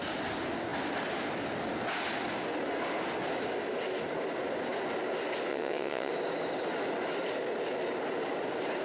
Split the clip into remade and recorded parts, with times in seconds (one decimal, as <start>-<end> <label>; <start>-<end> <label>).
0.0-5.5 recorded; 5.5-6.1 remade; 6.1-8.8 recorded

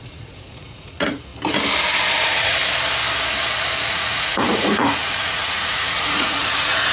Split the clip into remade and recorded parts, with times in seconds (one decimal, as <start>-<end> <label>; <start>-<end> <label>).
0.0-1.3 remade; 1.3-2.2 recorded; 2.2-2.6 remade; 2.6-3.9 recorded; 3.9-6.9 remade

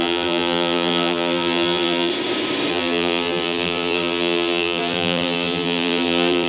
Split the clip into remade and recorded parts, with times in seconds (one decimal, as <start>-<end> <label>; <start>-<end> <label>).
0.0-2.1 remade; 2.1-2.7 recorded; 2.7-6.5 remade

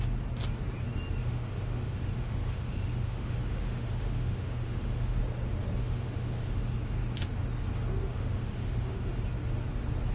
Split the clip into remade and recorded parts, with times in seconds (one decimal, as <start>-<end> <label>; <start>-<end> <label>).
0.0-1.2 recorded; 1.2-5.2 remade; 5.2-5.8 recorded; 5.8-6.7 remade; 6.7-8.1 recorded; 8.1-9.2 remade; 9.2-10.1 recorded

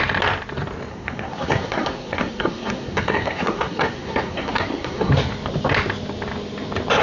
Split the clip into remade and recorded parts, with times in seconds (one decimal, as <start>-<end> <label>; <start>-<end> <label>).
0.0-0.9 recorded; 0.9-5.1 remade; 5.1-7.0 recorded

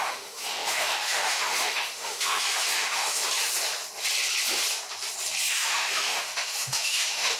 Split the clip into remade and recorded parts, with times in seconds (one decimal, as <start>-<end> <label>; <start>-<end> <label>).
0.0-3.2 remade; 3.2-5.5 recorded; 5.5-7.4 remade